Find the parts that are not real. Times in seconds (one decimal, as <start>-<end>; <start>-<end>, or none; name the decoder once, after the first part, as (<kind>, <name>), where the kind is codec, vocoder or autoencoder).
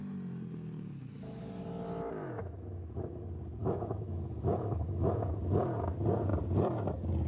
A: 2.2-3.2 (autoencoder, DAC-VAE); 3.6-5.3